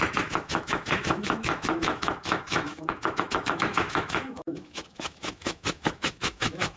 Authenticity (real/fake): fake